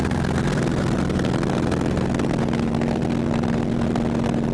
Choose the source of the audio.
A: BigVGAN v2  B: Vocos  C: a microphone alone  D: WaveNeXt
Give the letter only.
C